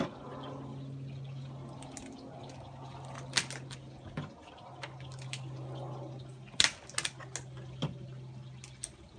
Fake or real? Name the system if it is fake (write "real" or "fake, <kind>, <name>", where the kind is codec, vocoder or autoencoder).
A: real